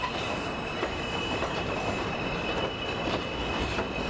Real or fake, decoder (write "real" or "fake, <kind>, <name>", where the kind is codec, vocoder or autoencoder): fake, vocoder, BigVGAN v2